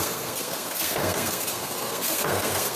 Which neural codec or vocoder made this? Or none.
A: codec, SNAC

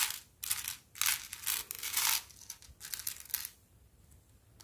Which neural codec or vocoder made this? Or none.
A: none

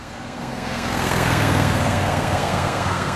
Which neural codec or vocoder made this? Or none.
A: codec, SNAC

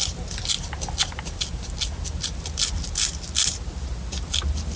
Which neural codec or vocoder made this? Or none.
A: none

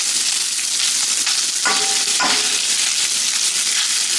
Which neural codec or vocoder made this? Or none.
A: none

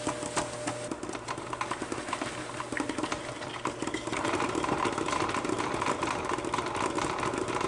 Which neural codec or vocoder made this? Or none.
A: none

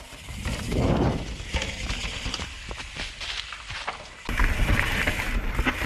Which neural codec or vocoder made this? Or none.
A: none